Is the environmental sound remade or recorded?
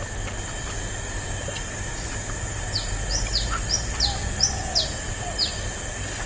recorded